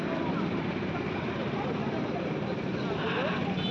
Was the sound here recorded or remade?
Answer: recorded